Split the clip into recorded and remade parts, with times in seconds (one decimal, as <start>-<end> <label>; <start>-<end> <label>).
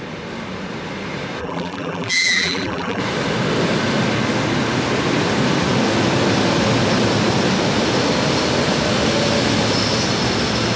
0.0-1.4 recorded; 1.4-3.0 remade; 3.0-10.8 recorded